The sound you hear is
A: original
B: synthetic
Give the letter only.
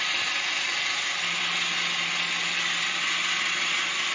A